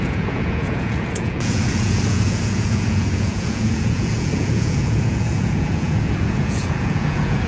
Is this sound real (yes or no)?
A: no